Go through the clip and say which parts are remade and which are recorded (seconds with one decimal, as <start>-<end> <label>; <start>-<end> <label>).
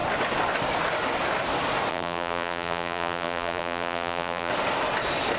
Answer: 0.0-1.9 recorded; 1.9-4.5 remade; 4.5-5.4 recorded